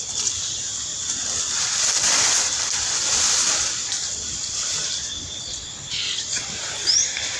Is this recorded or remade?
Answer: recorded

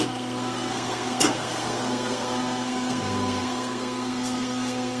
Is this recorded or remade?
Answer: remade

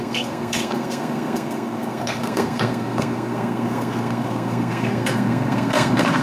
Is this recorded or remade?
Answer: remade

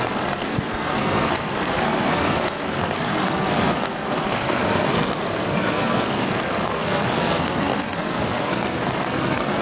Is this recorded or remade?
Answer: remade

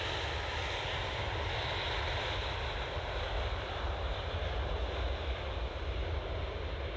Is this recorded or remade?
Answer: recorded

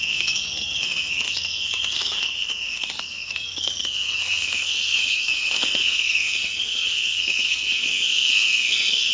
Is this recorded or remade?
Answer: remade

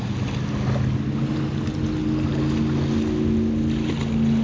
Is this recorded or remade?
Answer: recorded